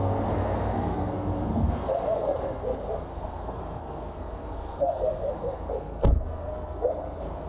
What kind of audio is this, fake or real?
fake